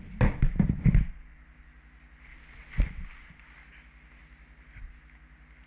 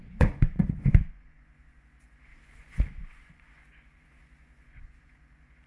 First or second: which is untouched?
first